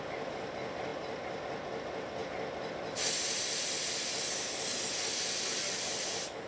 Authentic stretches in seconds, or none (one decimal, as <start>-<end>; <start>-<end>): 0.0-6.5